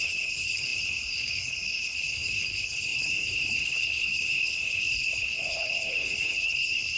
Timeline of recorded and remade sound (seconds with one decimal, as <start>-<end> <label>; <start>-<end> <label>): 0.0-7.0 remade